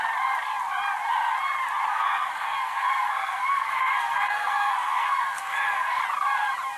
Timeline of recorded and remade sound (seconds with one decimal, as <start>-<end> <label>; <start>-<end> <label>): 0.0-1.9 recorded; 1.9-6.0 remade; 6.0-6.8 recorded